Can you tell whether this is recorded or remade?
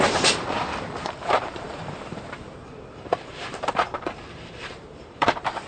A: remade